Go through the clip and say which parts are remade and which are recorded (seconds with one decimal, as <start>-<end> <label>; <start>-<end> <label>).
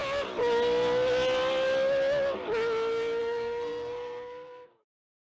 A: 0.0-3.2 recorded; 3.2-5.3 remade